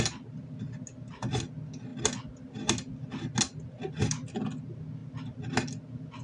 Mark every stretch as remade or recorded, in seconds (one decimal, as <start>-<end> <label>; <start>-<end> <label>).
0.0-6.2 recorded